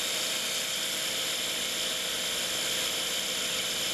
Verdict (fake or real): real